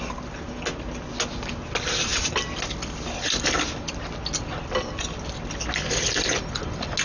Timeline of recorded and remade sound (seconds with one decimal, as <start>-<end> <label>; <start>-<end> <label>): 0.0-7.0 recorded